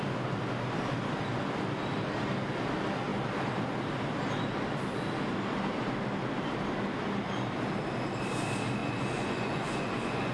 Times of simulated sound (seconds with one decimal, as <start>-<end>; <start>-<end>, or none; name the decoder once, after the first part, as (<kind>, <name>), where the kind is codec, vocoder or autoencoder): 8.8-10.3 (vocoder, Vocos)